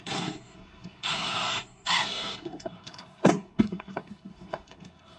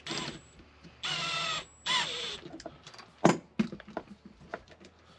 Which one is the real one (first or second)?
second